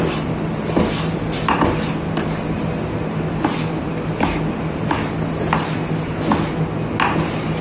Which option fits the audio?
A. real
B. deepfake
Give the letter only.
A